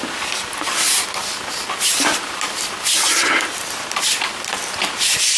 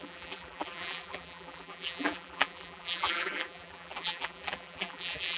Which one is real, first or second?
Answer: first